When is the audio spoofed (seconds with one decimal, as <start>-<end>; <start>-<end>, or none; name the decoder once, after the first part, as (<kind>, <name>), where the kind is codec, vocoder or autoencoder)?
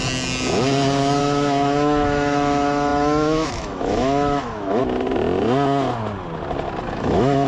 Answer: 1.2-4.8 (autoencoder, DAC-VAE); 6.9-7.5